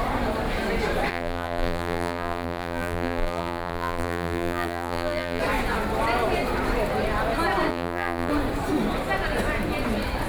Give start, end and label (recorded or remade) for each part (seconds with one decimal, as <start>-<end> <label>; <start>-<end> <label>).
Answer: 0.0-1.1 recorded; 1.1-5.4 remade; 5.4-7.7 recorded; 7.7-8.3 remade; 8.3-10.3 recorded